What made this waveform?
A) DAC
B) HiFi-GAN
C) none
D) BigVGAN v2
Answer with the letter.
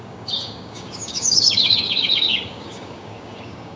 A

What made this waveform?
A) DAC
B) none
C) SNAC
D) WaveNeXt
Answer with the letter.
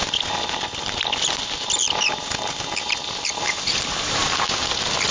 B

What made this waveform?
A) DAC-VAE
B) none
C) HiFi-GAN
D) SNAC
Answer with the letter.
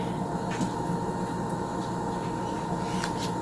B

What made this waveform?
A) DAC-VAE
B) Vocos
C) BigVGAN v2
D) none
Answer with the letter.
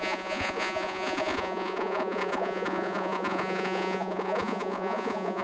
B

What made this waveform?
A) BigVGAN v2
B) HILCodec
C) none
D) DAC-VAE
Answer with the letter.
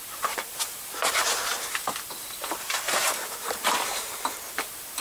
A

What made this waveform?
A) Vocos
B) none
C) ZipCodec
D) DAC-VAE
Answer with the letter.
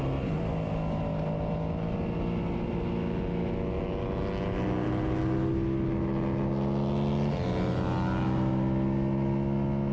B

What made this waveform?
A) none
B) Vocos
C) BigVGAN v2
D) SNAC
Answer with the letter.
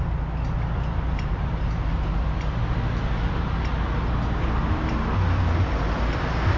A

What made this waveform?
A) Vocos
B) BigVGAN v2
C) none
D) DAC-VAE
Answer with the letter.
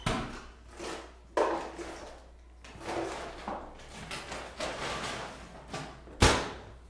C